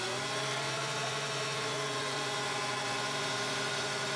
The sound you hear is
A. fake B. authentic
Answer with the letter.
A